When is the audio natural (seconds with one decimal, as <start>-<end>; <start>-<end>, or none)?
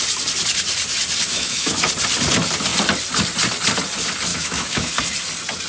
0.0-1.3; 1.9-4.3; 4.9-5.7